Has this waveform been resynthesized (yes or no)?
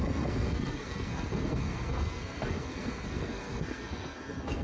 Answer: yes